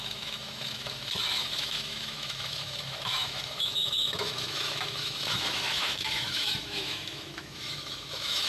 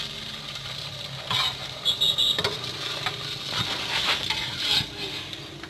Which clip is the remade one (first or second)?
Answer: first